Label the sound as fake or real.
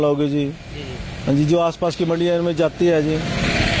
real